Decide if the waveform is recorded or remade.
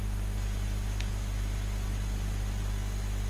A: recorded